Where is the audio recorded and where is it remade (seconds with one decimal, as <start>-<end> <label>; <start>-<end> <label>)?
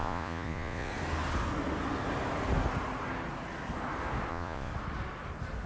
0.0-0.9 remade; 0.9-4.3 recorded; 4.3-4.7 remade; 4.7-5.7 recorded